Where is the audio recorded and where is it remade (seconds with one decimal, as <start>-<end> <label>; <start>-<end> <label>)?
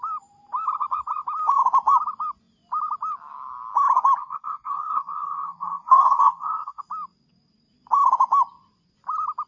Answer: 0.0-4.2 recorded; 4.2-6.8 remade; 6.8-9.5 recorded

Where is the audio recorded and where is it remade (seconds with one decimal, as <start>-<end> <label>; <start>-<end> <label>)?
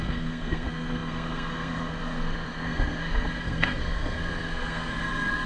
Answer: 0.0-5.5 remade